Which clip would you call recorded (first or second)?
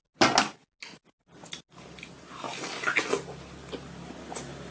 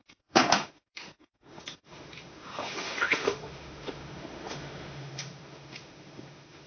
first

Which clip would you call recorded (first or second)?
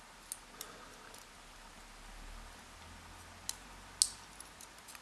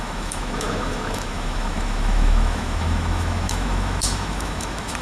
first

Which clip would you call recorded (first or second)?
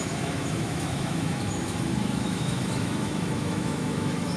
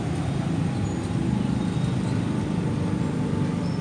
second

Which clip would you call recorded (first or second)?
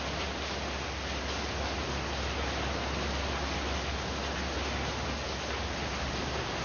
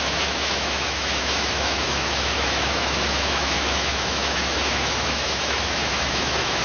first